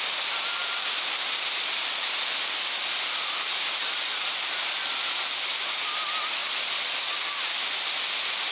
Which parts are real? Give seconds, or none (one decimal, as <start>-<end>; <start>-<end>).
6.4-8.5